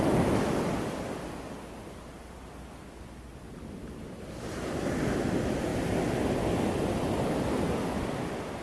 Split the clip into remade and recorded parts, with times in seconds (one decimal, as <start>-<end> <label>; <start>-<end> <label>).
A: 0.0-8.6 recorded